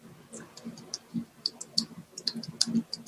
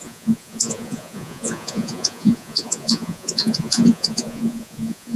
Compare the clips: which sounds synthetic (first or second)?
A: second